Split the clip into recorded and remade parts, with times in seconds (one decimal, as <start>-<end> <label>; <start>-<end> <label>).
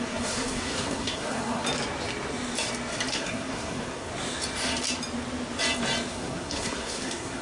0.0-1.6 remade; 1.6-3.1 recorded; 3.1-4.1 remade; 4.1-6.1 recorded; 6.1-7.4 remade